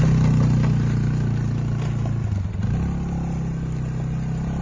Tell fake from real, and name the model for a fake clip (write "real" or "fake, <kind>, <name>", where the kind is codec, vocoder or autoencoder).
real